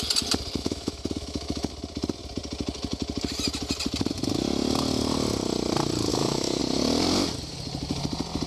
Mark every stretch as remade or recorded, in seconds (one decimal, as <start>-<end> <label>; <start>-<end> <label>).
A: 0.0-0.6 recorded; 0.6-1.7 remade; 1.7-6.1 recorded; 6.1-6.6 remade; 6.6-8.5 recorded